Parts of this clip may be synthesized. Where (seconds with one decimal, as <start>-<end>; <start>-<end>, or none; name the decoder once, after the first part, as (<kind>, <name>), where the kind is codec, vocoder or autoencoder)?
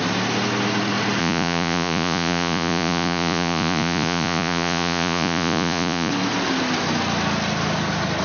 1.2-6.1 (vocoder, Vocos)